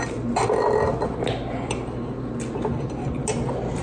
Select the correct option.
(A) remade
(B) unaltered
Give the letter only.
B